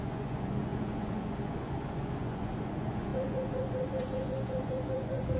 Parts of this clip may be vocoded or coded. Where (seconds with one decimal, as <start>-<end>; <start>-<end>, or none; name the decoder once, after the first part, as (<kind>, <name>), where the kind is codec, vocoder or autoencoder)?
0.0-5.4 (vocoder, Vocos)